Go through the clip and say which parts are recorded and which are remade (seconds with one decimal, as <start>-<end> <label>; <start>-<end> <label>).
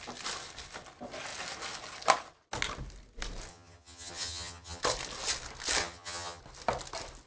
0.0-3.5 recorded; 3.5-4.8 remade; 4.8-5.8 recorded; 5.8-6.4 remade; 6.4-7.3 recorded